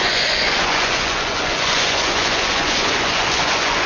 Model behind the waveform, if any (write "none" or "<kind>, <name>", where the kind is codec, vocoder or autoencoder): vocoder, Vocos